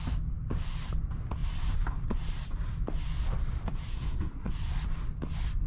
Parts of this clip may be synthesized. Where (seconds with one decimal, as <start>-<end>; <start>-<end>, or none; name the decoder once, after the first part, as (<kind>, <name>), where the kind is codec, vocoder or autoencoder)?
3.9-4.5 (codec, SNAC)